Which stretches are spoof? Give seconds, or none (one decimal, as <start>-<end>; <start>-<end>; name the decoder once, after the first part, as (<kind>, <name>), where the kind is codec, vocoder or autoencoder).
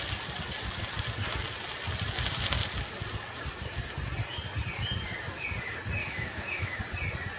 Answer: 6.0-6.8 (autoencoder, DAC-VAE)